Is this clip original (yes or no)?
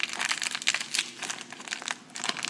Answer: yes